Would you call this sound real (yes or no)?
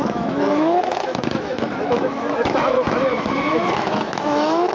no